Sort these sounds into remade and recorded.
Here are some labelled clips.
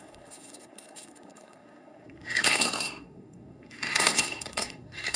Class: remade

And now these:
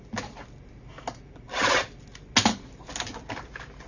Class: recorded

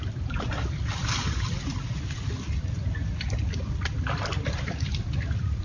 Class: remade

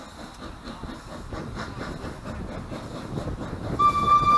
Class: recorded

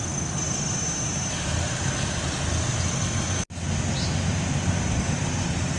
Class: recorded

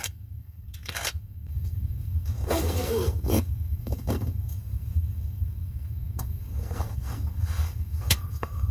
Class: remade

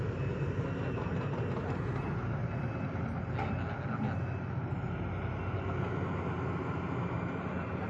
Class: recorded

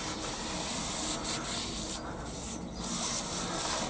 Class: recorded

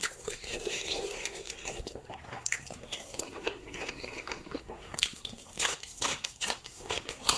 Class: remade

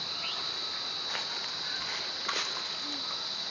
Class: recorded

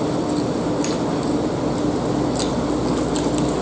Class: recorded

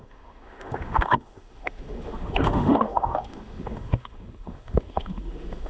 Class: remade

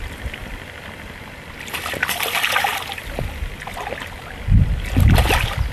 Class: recorded